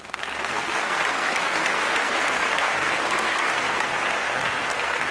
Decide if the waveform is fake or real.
fake